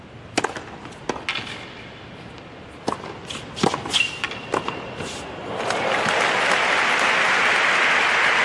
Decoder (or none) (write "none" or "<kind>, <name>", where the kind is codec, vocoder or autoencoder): none